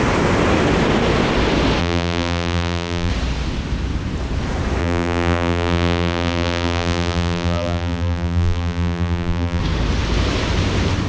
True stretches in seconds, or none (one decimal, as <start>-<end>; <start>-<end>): 0.0-1.8; 3.1-4.8; 9.6-11.1